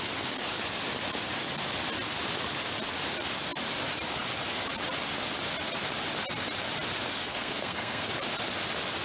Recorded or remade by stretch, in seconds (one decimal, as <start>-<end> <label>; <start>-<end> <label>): 0.0-7.1 recorded; 7.1-8.1 remade; 8.1-9.0 recorded